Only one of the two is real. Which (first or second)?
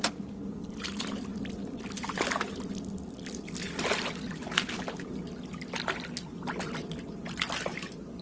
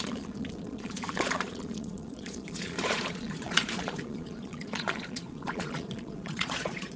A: first